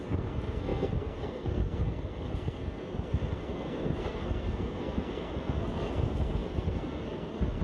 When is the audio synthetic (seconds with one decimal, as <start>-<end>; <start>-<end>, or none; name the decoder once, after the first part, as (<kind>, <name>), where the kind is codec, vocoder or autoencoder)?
0.0-7.6 (codec, SNAC)